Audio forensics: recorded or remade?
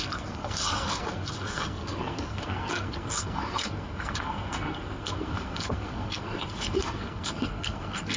remade